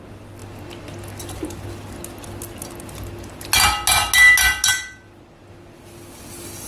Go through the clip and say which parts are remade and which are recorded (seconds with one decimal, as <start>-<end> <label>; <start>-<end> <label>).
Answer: 0.0-6.7 recorded